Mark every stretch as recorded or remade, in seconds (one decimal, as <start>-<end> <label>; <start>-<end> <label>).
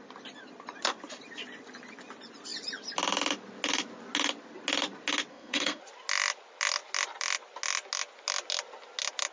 0.0-5.3 recorded; 5.3-5.8 remade; 5.8-9.3 recorded